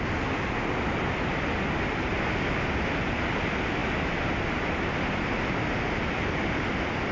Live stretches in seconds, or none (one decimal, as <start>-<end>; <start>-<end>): 0.0-7.1

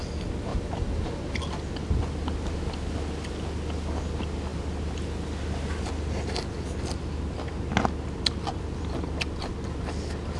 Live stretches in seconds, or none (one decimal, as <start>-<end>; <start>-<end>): 0.0-0.5; 1.4-10.4